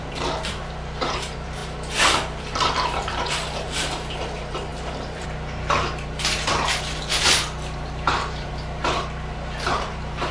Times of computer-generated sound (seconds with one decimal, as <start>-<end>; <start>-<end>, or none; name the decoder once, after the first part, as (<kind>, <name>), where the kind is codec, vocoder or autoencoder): 0.0-10.3 (vocoder, BigVGAN v2)